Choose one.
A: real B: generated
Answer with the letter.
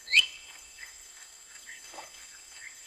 B